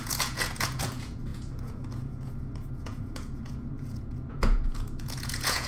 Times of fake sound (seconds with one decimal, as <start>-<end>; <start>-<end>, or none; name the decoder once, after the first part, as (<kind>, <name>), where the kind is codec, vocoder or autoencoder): 0.0-5.7 (vocoder, Vocos)